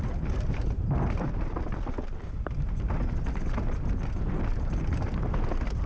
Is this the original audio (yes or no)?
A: yes